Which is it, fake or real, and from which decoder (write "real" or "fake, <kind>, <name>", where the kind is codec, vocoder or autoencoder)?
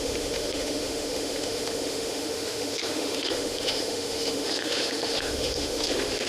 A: fake, autoencoder, DAC-VAE